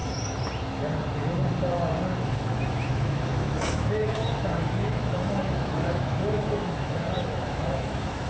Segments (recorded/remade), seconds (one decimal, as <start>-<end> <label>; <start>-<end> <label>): 0.0-2.2 recorded; 2.2-8.3 remade